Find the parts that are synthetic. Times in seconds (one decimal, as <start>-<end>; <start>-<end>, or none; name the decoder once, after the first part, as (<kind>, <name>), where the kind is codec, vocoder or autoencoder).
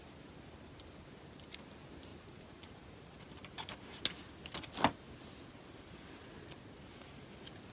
2.1-3.3 (vocoder, Vocos)